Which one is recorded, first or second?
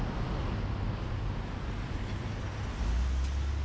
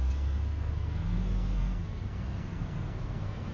first